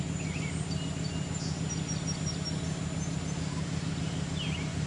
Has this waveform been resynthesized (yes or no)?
no